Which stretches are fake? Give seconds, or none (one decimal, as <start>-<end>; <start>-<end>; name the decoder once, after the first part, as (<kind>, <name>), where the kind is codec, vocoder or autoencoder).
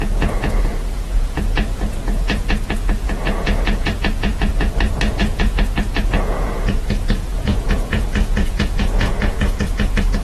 0.0-4.5 (vocoder, Vocos); 5.2-10.2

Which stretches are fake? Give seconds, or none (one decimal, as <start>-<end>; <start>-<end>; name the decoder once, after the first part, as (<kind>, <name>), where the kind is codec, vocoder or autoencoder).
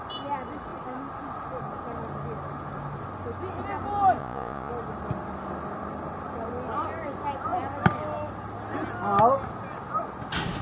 4.2-4.7 (vocoder, Vocos)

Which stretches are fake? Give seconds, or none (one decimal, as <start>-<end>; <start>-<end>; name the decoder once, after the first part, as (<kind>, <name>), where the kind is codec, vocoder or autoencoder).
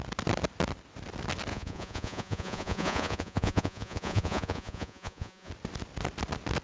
1.5-5.5 (vocoder, Vocos)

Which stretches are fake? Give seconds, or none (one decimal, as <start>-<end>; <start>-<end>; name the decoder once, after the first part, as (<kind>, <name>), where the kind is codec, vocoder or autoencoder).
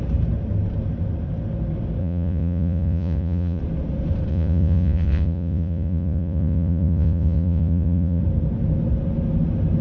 2.0-3.6 (vocoder, Vocos); 4.3-8.2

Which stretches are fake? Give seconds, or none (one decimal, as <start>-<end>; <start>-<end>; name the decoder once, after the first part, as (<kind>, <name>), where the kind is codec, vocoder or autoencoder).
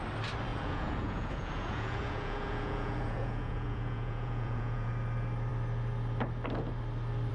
0.5-4.9 (vocoder, Vocos)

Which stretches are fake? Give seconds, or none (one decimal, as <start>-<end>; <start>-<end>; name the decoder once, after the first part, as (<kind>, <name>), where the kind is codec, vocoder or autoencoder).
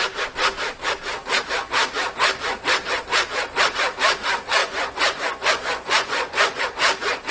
4.6-6.6 (vocoder, Vocos)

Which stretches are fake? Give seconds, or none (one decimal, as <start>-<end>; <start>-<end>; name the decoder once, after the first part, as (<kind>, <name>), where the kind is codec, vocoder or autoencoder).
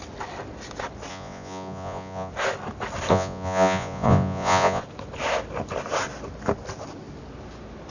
1.1-2.3 (vocoder, Vocos); 3.1-4.8